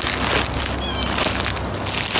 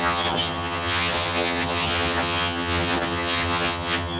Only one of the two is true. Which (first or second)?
first